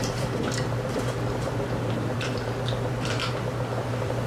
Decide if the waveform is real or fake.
fake